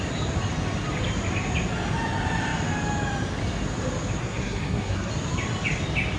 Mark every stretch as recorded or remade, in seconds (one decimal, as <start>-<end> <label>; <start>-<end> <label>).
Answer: 0.0-4.2 recorded; 4.2-5.1 remade; 5.1-6.2 recorded